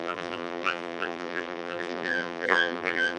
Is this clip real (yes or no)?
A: no